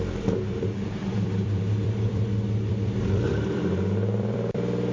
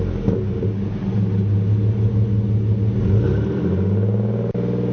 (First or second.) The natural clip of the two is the second